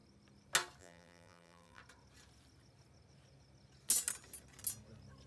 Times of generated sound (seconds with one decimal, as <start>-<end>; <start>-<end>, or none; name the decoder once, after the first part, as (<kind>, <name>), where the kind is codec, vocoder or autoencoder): 0.8-1.8 (vocoder, BigVGAN v2)